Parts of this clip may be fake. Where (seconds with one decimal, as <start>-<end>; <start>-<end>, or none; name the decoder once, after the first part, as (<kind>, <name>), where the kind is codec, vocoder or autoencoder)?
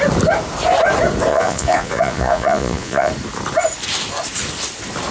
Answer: 1.3-3.1 (vocoder, Vocos)